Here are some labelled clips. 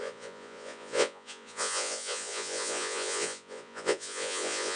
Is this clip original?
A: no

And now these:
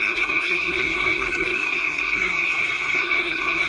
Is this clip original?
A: no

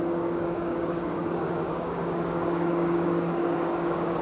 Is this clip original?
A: no